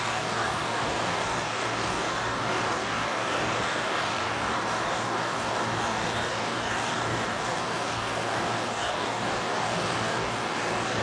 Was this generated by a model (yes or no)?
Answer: yes